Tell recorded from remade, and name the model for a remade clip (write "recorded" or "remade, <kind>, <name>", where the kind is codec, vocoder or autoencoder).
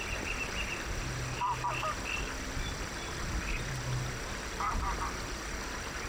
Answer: recorded